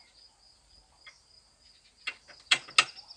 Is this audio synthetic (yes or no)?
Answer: no